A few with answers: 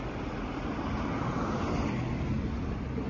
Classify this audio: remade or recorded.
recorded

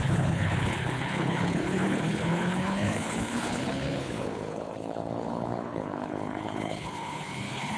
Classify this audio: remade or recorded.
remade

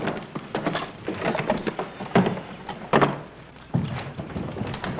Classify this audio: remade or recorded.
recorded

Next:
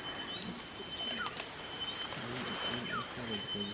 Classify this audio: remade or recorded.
recorded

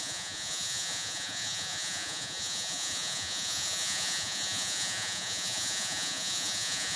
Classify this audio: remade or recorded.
remade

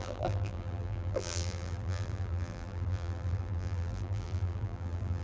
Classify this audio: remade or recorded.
remade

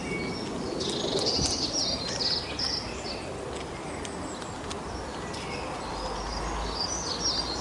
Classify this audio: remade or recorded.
recorded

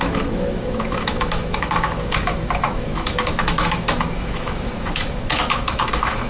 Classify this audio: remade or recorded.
remade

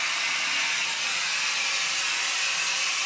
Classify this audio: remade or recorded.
recorded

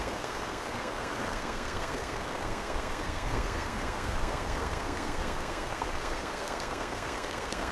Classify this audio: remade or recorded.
remade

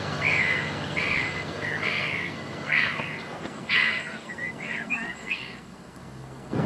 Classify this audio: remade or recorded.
remade